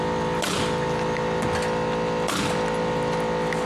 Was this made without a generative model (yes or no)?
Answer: yes